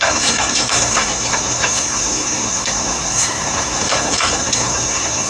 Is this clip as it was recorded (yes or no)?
no